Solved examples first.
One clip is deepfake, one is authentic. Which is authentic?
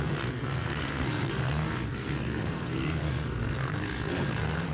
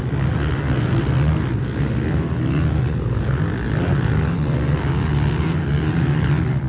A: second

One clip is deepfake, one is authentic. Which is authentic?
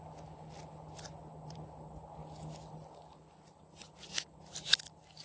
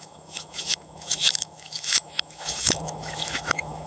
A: first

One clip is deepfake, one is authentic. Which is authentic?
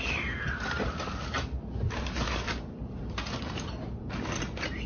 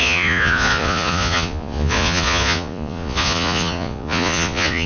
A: first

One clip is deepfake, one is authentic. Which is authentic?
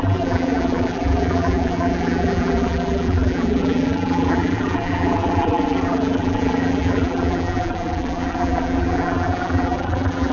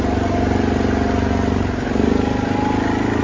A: second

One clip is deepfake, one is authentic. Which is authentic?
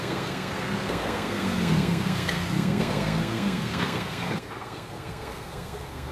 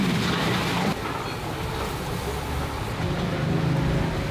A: second